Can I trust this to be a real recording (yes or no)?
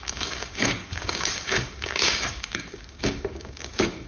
no